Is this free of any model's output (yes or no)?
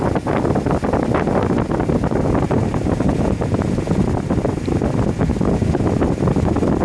yes